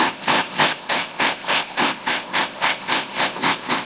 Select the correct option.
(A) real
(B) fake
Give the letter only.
B